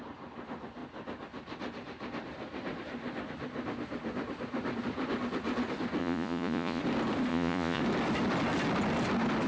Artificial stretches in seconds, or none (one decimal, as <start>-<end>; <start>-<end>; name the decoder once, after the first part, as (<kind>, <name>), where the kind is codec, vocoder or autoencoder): 6.0-6.8 (vocoder, Vocos); 7.3-7.8